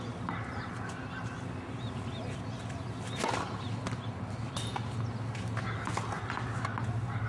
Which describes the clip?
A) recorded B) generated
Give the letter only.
A